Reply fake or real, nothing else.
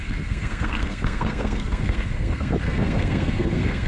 fake